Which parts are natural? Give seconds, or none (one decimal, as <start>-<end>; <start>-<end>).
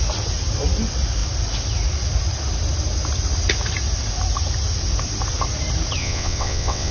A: 0.0-6.0